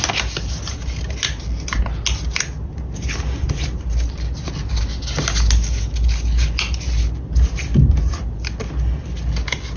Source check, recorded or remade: recorded